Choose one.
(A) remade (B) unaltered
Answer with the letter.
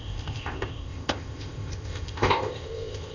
A